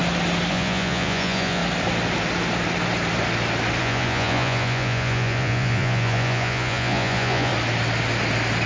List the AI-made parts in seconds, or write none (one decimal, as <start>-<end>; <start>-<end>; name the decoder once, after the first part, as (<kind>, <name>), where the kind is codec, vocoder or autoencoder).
0.5-1.6 (vocoder, Vocos); 3.8-7.5